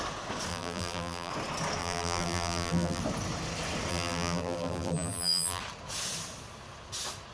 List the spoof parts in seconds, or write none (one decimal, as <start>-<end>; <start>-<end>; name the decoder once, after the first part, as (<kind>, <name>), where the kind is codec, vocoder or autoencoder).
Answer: 0.5-1.3 (vocoder, BigVGAN v2); 1.8-3.0; 3.9-5.6